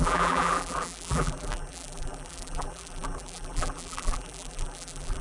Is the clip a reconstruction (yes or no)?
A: yes